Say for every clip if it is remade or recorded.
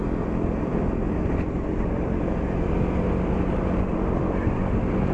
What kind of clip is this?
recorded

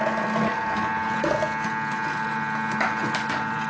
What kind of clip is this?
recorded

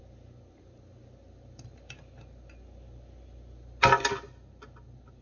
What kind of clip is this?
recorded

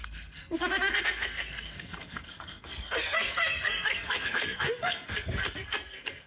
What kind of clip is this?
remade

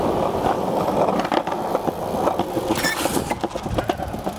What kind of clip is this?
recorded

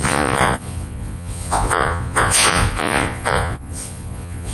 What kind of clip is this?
remade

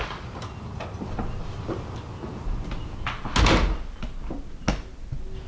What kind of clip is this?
recorded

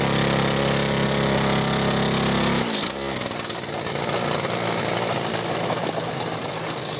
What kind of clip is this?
recorded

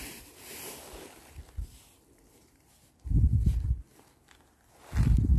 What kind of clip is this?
recorded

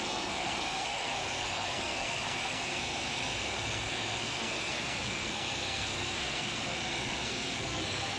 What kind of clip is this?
remade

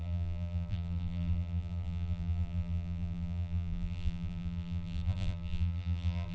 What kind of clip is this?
remade